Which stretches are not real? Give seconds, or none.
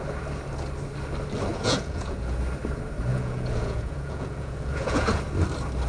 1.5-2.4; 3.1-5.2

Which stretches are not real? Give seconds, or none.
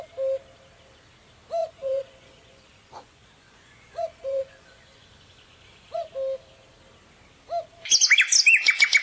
1.6-6.1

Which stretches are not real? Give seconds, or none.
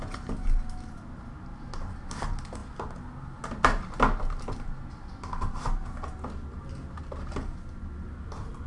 none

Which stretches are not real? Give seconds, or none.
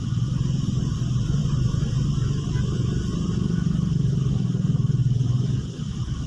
1.4-1.9; 5.0-5.8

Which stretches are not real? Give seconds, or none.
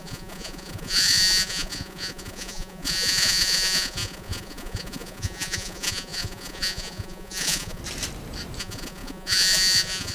0.0-7.8; 8.6-10.1